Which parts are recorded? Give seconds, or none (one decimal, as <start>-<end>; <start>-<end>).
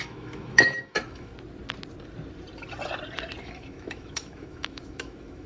1.3-3.4